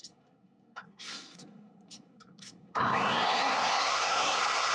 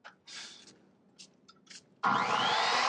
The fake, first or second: first